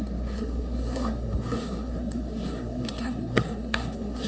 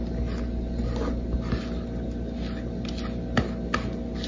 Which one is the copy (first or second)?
first